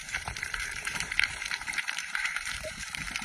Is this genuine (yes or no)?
no